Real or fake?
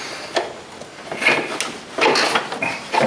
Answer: real